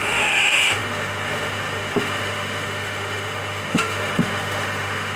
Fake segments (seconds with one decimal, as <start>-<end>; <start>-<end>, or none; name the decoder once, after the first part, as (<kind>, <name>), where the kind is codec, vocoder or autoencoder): 0.0-5.2 (autoencoder, DAC-VAE)